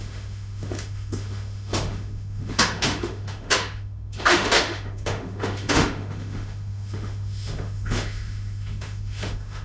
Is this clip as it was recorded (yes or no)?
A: no